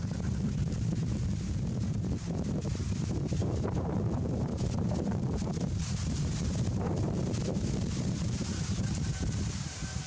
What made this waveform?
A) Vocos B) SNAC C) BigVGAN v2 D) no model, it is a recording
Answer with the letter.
C